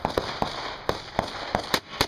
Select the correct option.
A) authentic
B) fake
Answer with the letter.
A